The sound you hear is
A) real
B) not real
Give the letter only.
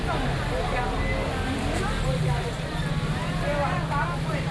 A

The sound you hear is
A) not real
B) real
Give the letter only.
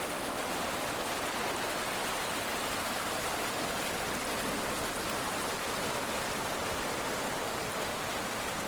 B